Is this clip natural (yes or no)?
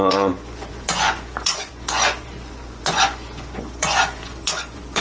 no